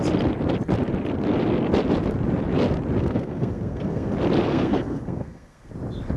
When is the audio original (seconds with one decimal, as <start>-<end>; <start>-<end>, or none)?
0.0-3.0; 4.1-4.5; 5.7-6.2

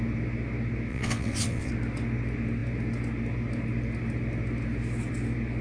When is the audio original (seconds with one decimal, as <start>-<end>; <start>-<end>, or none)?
0.0-0.9; 1.7-5.6

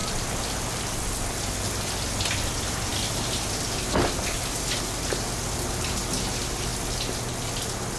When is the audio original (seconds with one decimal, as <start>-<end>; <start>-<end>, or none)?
0.0-8.0

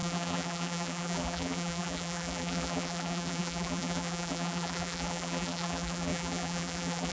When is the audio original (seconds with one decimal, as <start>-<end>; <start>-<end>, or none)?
none